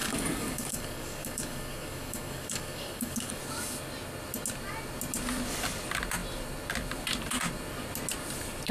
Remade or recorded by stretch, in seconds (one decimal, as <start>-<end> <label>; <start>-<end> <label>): 0.0-3.4 remade; 3.4-8.7 recorded